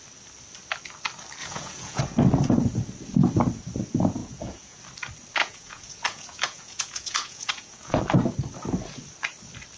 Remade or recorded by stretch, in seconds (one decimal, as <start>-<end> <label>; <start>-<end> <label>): 0.0-1.4 recorded; 1.4-2.0 remade; 2.0-4.2 recorded; 4.2-4.8 remade; 4.8-5.4 recorded; 5.4-8.0 remade; 8.0-9.8 recorded